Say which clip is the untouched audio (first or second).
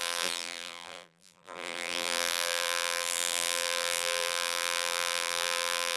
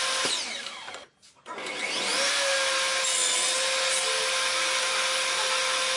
second